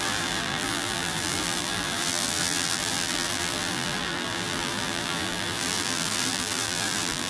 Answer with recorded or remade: remade